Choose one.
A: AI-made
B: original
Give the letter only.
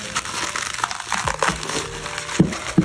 B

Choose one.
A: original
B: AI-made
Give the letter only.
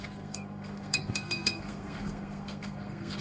B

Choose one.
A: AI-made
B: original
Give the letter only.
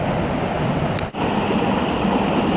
B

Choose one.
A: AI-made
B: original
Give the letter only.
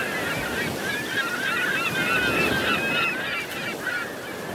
B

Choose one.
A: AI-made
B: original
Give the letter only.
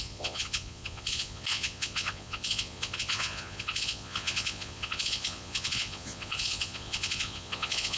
A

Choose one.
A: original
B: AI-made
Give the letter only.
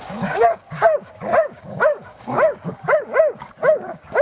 B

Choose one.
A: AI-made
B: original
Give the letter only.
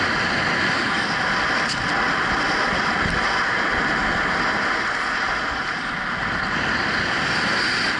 B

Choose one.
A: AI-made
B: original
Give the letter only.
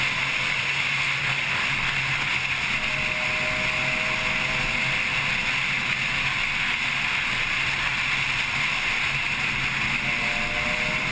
B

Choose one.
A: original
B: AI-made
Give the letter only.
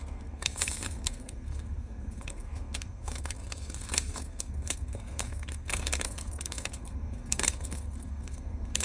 B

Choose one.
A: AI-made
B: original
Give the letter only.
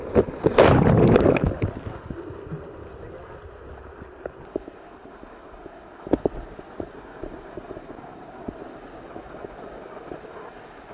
B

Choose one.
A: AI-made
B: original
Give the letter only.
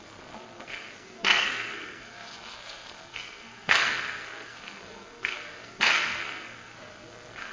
A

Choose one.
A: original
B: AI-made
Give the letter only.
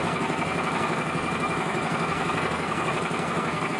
B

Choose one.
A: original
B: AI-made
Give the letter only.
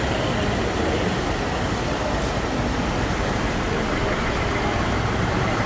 A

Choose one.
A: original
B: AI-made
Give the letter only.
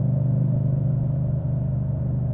B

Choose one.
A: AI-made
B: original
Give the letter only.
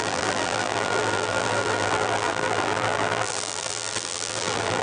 A